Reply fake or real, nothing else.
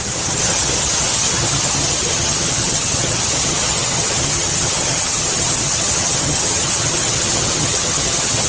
fake